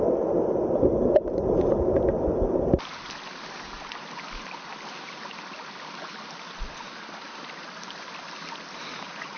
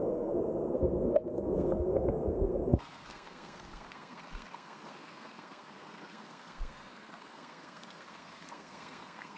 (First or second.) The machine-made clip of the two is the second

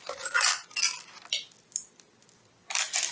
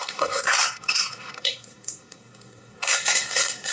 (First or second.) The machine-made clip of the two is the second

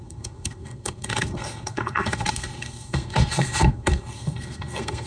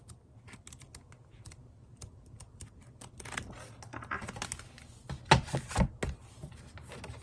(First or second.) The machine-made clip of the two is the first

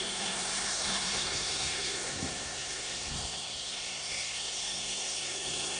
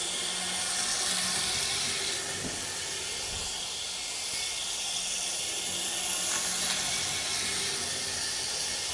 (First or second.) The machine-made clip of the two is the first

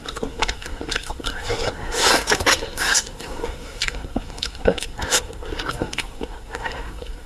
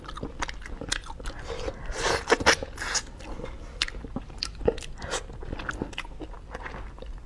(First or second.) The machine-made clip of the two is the first